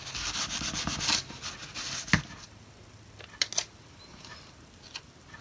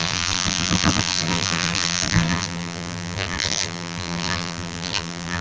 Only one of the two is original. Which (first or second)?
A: first